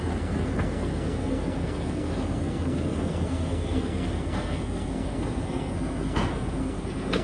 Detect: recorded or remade remade